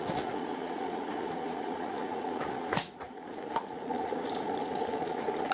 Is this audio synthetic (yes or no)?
yes